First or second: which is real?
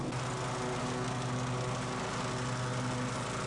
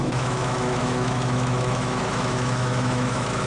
first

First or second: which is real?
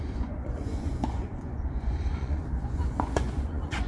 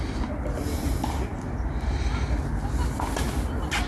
second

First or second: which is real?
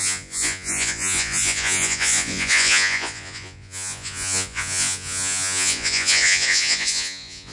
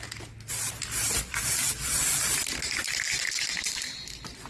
second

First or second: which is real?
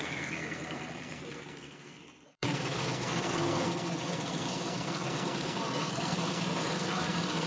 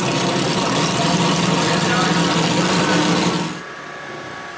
second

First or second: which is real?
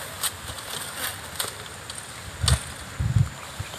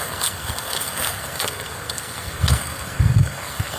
first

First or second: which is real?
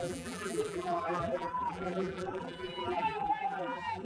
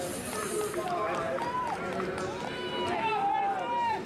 second